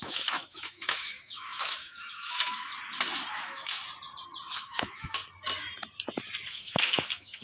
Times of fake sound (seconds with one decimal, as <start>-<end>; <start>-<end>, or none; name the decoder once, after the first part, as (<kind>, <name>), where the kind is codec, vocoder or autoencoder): 0.0-2.7 (autoencoder, DAC-VAE); 3.3-3.8; 4.5-5.2; 6.5-7.4